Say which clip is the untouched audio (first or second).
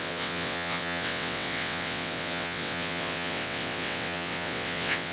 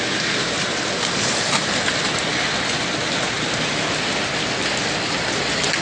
second